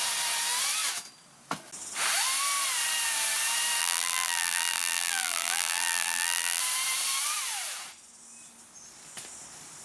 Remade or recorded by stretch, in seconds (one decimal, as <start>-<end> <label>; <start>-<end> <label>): 0.0-3.8 recorded; 3.8-6.6 remade; 6.6-9.8 recorded